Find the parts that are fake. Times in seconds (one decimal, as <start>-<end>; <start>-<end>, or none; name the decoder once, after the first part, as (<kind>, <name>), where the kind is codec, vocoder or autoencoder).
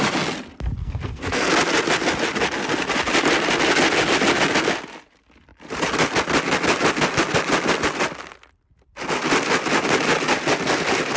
0.8-1.5 (codec, SNAC)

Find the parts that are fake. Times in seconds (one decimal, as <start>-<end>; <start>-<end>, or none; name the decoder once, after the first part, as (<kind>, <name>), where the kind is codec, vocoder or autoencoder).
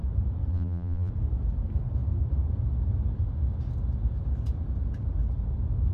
0.5-1.1 (vocoder, BigVGAN v2)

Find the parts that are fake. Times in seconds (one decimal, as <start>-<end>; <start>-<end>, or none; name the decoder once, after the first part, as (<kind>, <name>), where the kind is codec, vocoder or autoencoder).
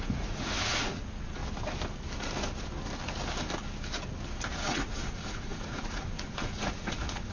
0.0-1.4 (vocoder, Vocos); 4.5-7.3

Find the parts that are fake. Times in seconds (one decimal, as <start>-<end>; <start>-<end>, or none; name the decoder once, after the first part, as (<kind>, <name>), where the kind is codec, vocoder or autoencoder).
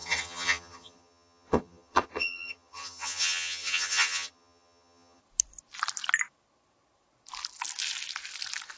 0.0-5.2 (vocoder, HiFi-GAN)